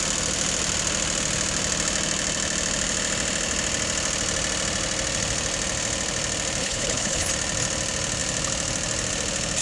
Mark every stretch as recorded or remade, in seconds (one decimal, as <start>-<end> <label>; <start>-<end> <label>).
0.0-6.6 recorded; 6.6-7.3 remade; 7.3-9.6 recorded